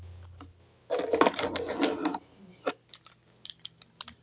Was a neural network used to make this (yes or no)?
no